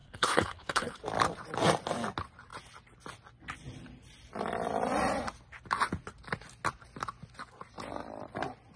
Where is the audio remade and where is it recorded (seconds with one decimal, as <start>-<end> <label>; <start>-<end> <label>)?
0.0-1.0 remade; 1.0-8.8 recorded